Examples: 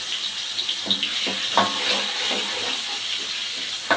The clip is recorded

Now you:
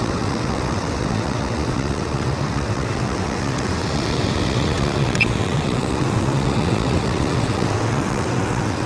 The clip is remade